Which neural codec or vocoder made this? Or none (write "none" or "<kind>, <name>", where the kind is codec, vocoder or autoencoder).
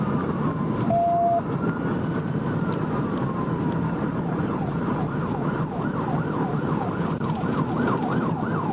vocoder, BigVGAN v2